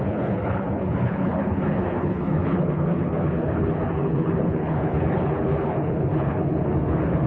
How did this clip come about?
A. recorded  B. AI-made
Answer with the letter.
B